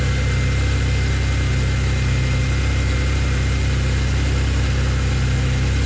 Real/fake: real